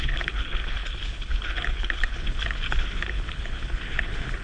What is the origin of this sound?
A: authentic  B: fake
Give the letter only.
B